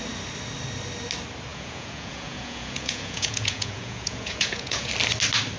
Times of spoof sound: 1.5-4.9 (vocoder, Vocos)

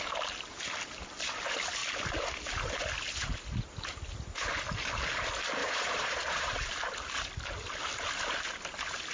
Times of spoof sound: 5.6-6.7 (vocoder, Vocos)

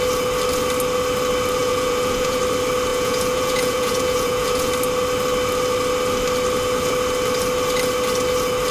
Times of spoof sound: 1.6-2.4 (vocoder, Vocos); 2.9-4.7

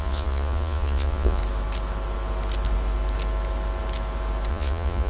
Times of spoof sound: 0.0-1.4 (vocoder, Vocos); 4.5-5.1